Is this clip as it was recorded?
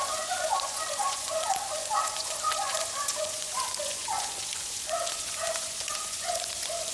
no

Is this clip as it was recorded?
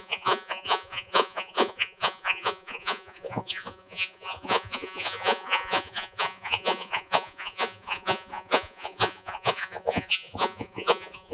no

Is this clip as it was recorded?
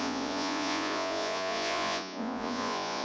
no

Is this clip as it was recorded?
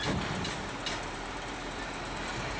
yes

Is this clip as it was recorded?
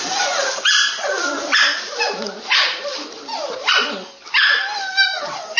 yes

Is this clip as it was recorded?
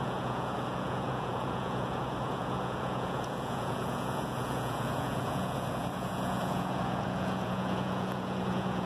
no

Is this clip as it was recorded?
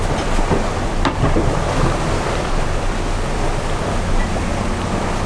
yes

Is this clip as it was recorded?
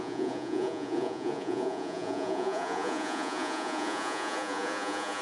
no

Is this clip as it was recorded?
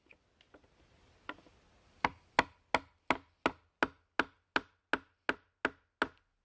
yes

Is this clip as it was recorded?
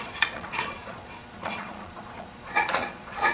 no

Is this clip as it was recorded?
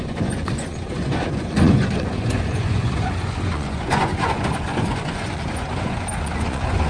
no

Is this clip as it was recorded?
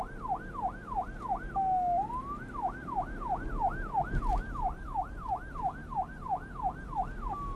yes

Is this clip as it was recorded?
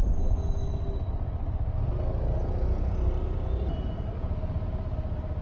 yes